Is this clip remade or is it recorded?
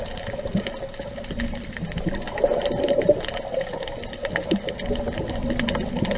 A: recorded